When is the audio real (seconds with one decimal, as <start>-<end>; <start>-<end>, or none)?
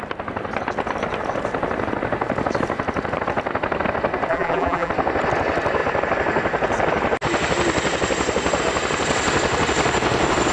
0.0-4.3; 4.9-10.5